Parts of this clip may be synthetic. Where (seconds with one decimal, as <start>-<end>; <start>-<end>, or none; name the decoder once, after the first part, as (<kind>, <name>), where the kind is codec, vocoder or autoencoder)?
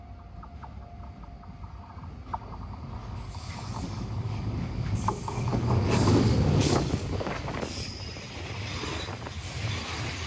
3.0-7.6 (codec, DAC)